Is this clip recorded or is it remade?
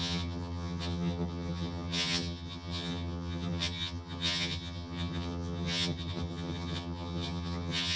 remade